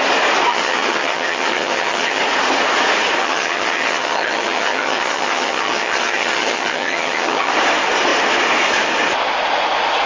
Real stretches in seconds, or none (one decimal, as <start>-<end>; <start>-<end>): 0.0-0.5; 2.2-3.2; 7.5-10.1